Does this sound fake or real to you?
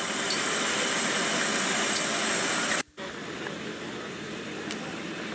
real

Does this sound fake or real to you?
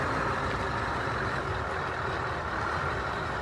real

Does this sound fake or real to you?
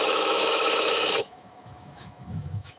fake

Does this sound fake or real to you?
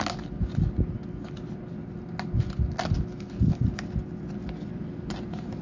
real